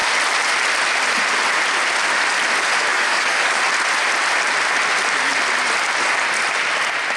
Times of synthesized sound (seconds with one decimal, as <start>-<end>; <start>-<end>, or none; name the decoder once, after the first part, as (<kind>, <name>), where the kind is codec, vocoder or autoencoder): 2.9-3.6 (codec, DAC)